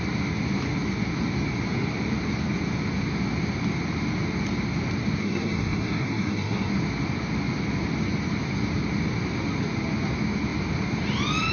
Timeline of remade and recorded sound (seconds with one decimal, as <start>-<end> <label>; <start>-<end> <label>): 0.0-5.2 recorded; 5.2-6.7 remade; 6.7-11.5 recorded